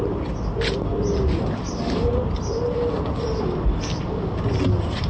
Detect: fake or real real